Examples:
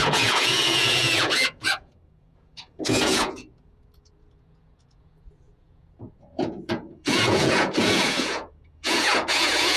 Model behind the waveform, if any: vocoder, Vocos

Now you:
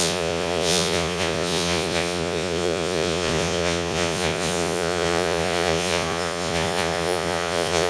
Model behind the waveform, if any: vocoder, Vocos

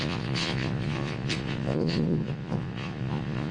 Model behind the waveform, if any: vocoder, Vocos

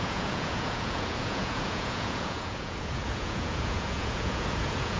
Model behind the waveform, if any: vocoder, Vocos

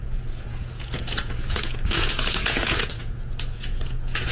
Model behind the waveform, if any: vocoder, Vocos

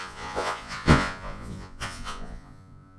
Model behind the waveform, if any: vocoder, Vocos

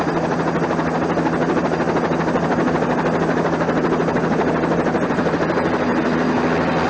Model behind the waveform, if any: none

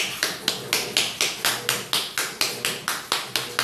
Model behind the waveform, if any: none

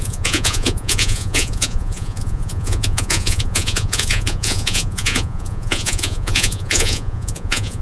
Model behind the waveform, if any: vocoder, Vocos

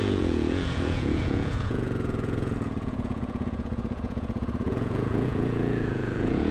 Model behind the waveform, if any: vocoder, Vocos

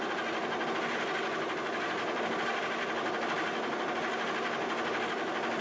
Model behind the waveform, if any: none